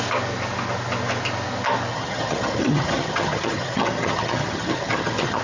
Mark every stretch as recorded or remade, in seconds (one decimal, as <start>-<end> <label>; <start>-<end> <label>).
0.0-1.9 recorded; 1.9-5.4 remade